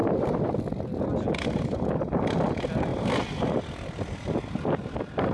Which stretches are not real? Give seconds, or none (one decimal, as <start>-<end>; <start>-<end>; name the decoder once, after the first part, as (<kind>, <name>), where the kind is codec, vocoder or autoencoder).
0.0-0.6 (vocoder, BigVGAN v2); 2.9-3.6